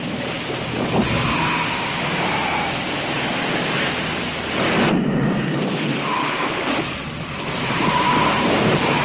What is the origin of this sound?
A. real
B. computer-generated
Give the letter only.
A